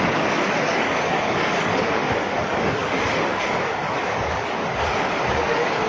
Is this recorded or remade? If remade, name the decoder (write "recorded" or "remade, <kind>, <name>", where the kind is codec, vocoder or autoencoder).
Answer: remade, codec, DAC